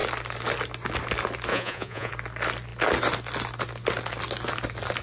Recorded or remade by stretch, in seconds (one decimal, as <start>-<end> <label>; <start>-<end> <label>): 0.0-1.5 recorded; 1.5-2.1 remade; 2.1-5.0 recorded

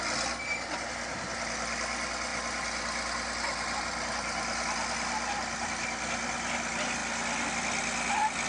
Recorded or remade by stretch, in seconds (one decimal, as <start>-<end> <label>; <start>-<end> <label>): 0.0-8.5 recorded

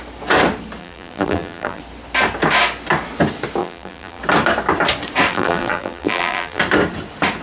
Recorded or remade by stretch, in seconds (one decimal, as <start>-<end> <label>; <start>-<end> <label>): 0.0-0.8 recorded; 0.8-1.8 remade; 1.8-3.6 recorded; 3.6-4.2 remade; 4.2-5.3 recorded; 5.3-6.6 remade; 6.6-7.4 recorded